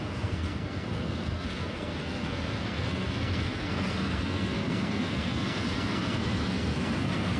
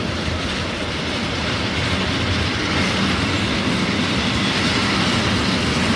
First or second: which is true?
second